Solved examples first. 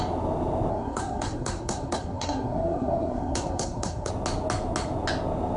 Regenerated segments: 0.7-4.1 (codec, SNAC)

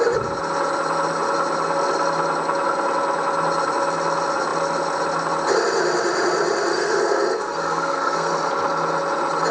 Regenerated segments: 6.7-8.3 (codec, SNAC)

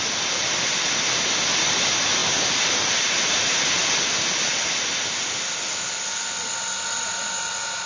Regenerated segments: none

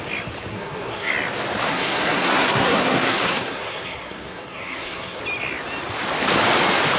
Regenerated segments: 0.5-1.1 (codec, SNAC); 1.7-5.2

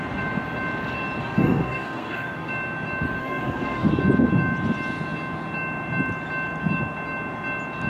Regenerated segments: 1.2-2.5 (codec, SNAC); 3.2-3.9

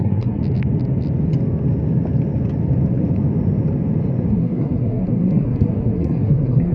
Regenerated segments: 0.0-0.4 (codec, SNAC); 4.3-6.7